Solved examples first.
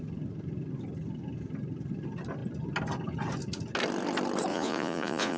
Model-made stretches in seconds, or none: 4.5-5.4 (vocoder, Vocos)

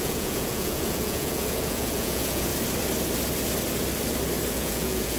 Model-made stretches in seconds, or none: 0.0-2.5 (vocoder, Vocos); 4.5-5.2

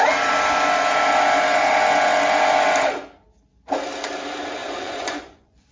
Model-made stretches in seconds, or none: 4.6-5.7 (vocoder, Vocos)

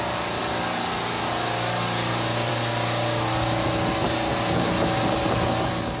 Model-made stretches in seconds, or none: none

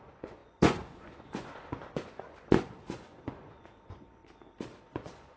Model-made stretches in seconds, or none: 0.0-4.2 (vocoder, Vocos); 4.8-5.4

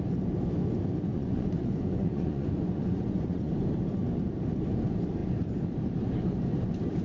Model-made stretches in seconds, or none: 1.1-3.5 (vocoder, Vocos)

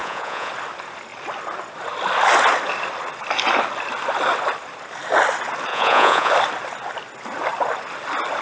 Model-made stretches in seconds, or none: 0.0-0.5 (vocoder, Vocos); 5.7-6.3

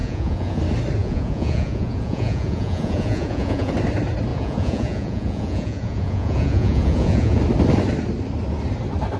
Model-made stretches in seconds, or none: 0.0-0.6 (vocoder, Vocos); 1.0-3.7; 4.3-7.4